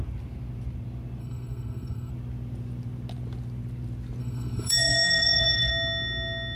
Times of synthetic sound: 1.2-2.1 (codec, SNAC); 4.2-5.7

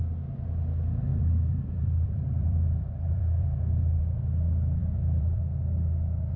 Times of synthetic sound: 1.1-4.0 (vocoder, BigVGAN v2); 4.8-5.4

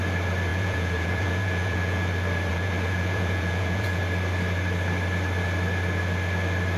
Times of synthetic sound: 0.5-2.0 (vocoder, Vocos); 2.5-4.0

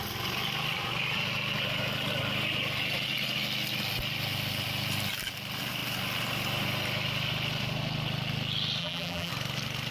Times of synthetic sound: 8.8-9.3 (vocoder, BigVGAN v2)

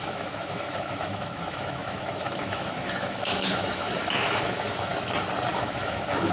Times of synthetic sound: 0.0-4.9 (autoencoder, DAC-VAE); 5.5-6.3

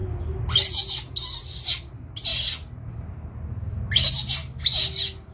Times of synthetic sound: none

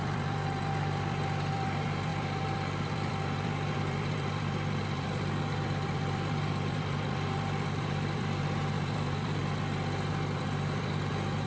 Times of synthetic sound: 0.0-9.4 (vocoder, BigVGAN v2); 10.1-11.5

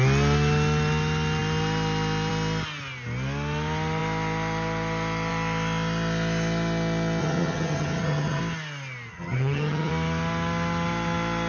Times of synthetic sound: 7.2-8.4 (vocoder, HiFi-GAN); 9.1-9.9